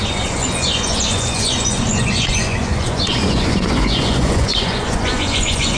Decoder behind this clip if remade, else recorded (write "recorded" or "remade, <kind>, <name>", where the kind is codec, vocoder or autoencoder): remade, vocoder, Vocos